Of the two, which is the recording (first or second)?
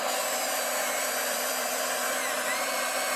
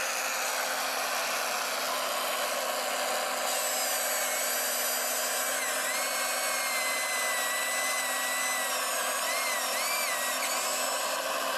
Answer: second